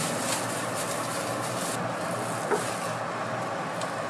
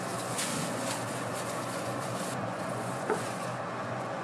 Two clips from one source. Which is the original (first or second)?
first